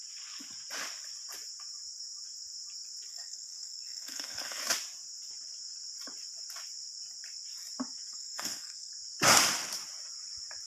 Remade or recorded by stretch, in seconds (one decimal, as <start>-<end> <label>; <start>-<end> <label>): 0.0-3.1 recorded; 3.1-4.6 remade; 4.6-8.1 recorded; 8.1-8.9 remade; 8.9-10.7 recorded